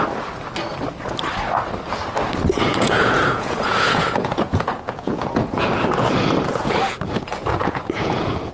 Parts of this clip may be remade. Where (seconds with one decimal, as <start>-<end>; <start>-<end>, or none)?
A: 2.7-5.7; 6.5-7.0; 7.5-8.5